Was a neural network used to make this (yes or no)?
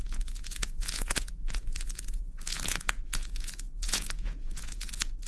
yes